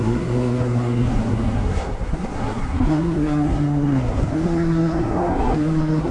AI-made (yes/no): yes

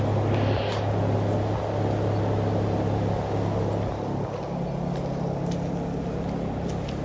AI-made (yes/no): no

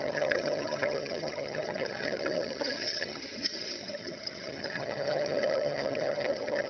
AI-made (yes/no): yes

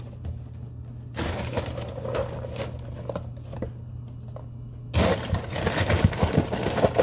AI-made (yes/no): no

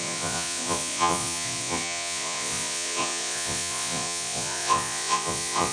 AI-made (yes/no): yes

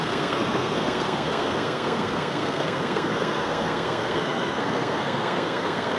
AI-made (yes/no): yes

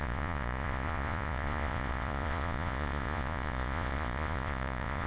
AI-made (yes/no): yes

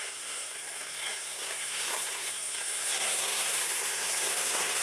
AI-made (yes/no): yes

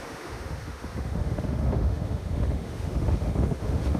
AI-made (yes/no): yes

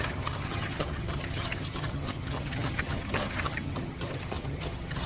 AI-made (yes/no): yes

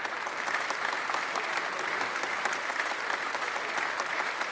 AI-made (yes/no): no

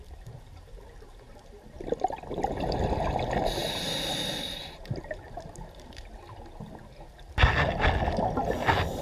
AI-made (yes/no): no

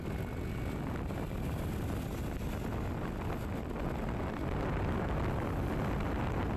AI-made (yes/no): no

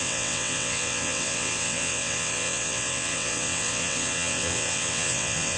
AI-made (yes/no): yes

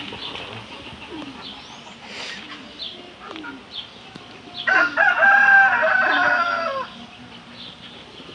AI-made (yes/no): no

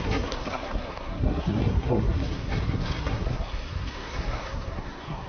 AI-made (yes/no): yes